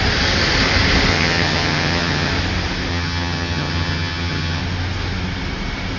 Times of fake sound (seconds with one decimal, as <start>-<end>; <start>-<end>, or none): 1.1-2.3; 2.9-4.6